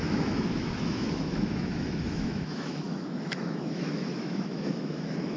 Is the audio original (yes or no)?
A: no